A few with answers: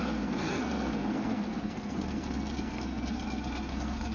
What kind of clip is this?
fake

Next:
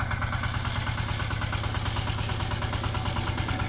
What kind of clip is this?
real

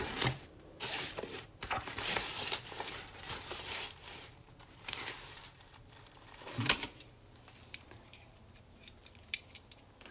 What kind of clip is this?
fake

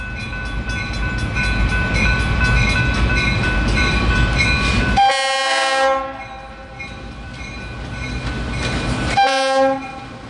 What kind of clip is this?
real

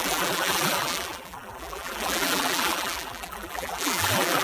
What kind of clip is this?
fake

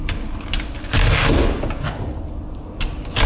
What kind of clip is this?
real